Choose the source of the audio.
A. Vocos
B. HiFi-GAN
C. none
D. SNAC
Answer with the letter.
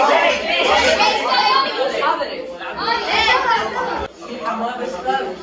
C